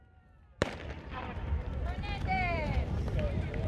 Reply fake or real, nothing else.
fake